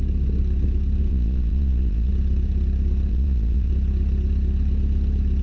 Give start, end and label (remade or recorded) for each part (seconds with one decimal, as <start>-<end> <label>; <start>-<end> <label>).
0.0-1.1 recorded; 1.1-2.1 remade; 2.1-3.1 recorded; 3.1-3.7 remade; 3.7-5.4 recorded